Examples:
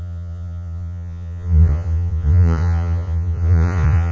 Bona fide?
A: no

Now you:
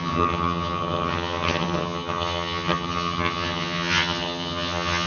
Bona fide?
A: no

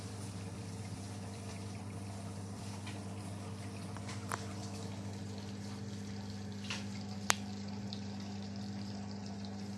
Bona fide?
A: no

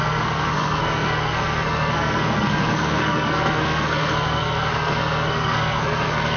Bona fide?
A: no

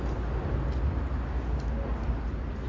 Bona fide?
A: yes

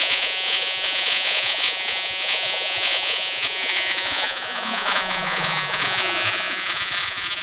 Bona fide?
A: no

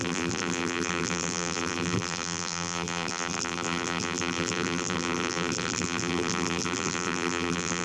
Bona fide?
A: no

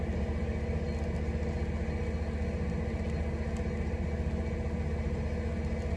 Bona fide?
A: yes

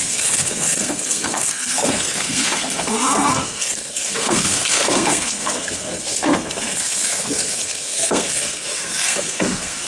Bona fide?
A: no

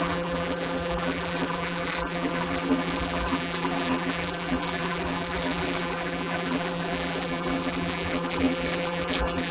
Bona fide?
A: no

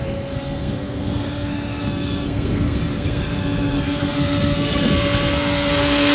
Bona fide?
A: no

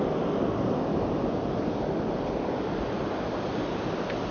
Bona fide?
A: yes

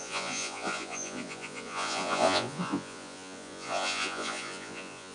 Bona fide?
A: no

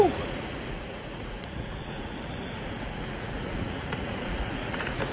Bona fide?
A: no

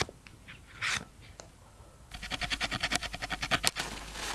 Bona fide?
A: yes